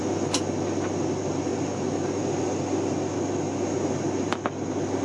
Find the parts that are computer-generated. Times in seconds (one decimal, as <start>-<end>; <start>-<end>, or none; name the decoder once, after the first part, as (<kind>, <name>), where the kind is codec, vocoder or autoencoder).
none